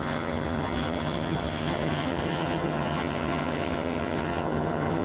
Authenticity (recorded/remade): remade